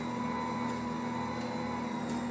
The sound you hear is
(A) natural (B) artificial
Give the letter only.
A